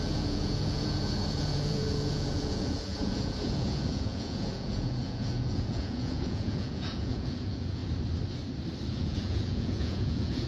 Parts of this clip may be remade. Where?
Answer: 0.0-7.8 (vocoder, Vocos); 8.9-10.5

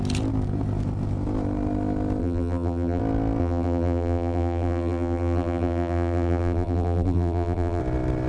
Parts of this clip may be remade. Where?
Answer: 2.2-3.0 (vocoder, BigVGAN v2); 3.4-7.8

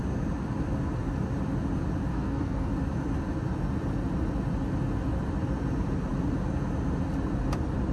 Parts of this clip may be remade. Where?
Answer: 2.1-2.7 (codec, SNAC)

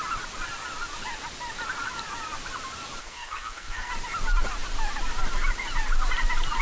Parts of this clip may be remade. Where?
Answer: 3.0-3.9 (codec, SNAC)

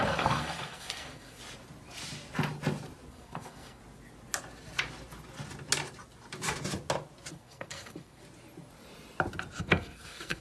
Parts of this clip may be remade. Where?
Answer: 0.0-1.4 (codec, SNAC); 3.1-3.8; 7.3-8.2; 9.6-10.4